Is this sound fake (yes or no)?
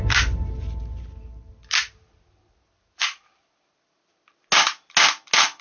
no